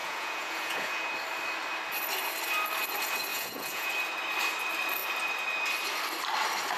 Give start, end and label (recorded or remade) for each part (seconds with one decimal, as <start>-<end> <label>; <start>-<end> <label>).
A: 0.0-1.1 remade; 1.1-3.3 recorded; 3.3-3.9 remade; 3.9-6.8 recorded